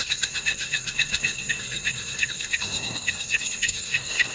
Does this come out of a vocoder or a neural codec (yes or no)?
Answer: yes